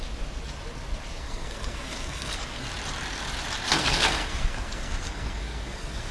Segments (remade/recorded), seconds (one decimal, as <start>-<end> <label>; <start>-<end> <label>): 0.0-1.1 recorded; 1.1-2.6 remade; 2.6-3.7 recorded; 3.7-6.1 remade